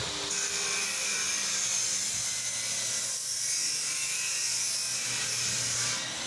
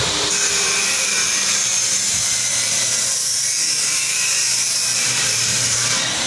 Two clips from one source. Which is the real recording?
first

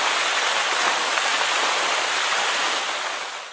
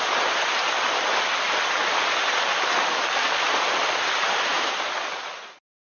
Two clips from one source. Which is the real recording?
first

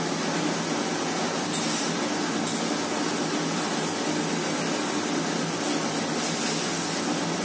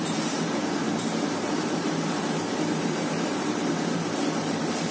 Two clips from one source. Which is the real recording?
first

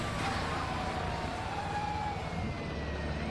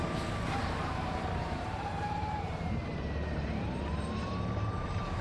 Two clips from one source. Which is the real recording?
first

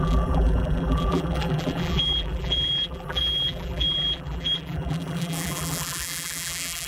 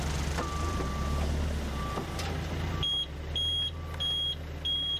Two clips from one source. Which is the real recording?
second